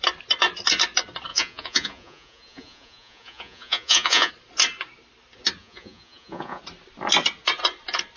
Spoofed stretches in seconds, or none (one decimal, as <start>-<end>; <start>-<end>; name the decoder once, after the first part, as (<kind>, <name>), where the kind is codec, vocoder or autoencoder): 1.3-4.3 (vocoder, Vocos); 5.6-6.6